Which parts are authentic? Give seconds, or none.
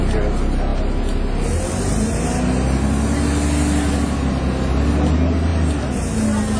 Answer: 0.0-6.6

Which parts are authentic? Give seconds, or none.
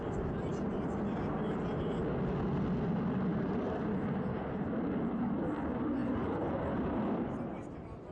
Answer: 0.0-3.3; 4.3-8.1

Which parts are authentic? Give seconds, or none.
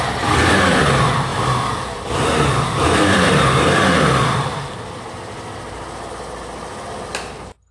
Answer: 0.0-1.3; 4.0-7.7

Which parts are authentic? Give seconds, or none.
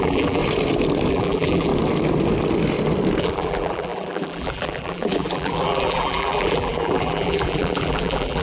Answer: 0.4-1.1; 1.7-3.2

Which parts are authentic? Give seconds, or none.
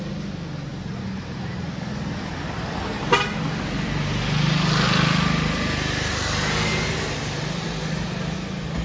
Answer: 0.0-8.8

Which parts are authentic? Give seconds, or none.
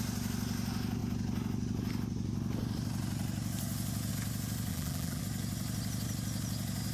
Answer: 0.0-4.7; 5.2-6.9